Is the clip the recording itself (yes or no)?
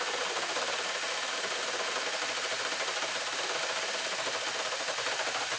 yes